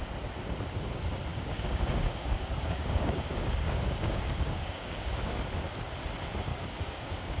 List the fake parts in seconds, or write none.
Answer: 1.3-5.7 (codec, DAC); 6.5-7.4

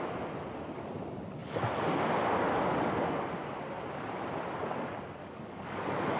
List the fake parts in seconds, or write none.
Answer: 5.2-5.8 (codec, DAC)

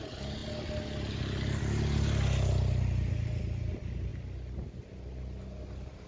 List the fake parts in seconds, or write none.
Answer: none

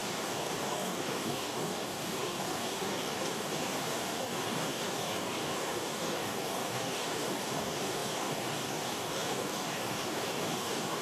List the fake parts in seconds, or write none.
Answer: 0.0-11.0 (codec, DAC)